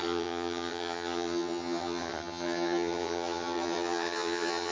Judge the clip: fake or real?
fake